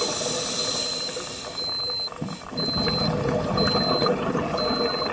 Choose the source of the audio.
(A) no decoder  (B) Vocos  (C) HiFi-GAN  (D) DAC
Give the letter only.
A